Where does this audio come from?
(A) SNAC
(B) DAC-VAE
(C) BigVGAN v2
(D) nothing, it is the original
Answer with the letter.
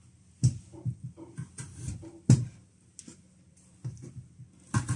D